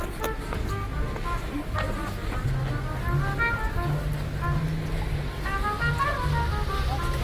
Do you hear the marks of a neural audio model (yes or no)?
no